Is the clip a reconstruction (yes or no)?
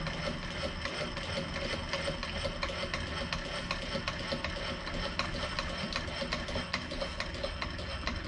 no